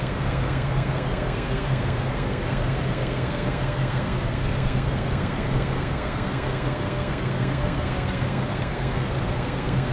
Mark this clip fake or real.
fake